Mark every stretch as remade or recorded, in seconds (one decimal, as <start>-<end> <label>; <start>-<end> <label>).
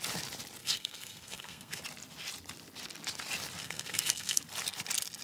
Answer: 0.0-0.6 recorded; 0.6-1.8 remade; 1.8-3.6 recorded; 3.6-4.4 remade; 4.4-5.2 recorded